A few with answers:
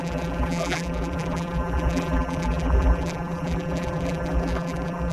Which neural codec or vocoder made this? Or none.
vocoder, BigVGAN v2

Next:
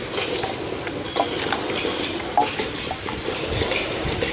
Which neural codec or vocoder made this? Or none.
none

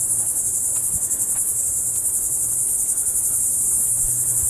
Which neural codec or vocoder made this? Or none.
none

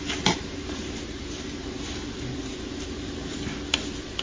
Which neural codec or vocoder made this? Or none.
none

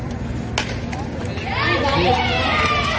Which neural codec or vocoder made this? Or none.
none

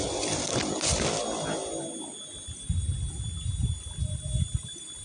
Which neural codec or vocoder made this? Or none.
none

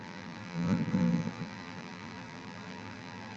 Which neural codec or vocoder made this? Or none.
vocoder, BigVGAN v2